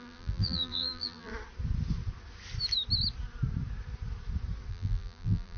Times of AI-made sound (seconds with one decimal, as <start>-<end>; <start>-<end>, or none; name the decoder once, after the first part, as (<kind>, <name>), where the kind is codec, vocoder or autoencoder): 0.0-1.3 (vocoder, BigVGAN v2); 4.7-5.6